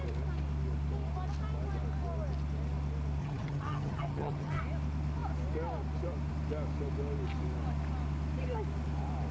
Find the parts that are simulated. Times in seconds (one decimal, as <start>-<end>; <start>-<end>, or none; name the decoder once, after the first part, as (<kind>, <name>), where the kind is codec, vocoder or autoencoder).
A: 3.2-4.6 (vocoder, HiFi-GAN)